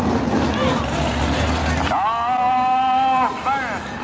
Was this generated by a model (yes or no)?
no